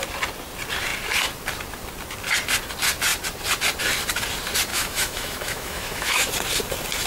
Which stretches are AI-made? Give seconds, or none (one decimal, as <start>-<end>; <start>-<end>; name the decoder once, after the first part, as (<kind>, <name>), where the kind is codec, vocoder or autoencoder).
4.7-6.3 (autoencoder, DAC-VAE)

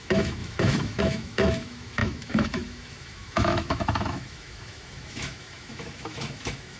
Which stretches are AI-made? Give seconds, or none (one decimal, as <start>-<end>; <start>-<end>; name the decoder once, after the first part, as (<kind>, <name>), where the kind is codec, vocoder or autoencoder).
0.0-6.8 (autoencoder, DAC-VAE)